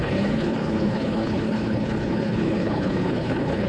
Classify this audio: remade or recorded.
remade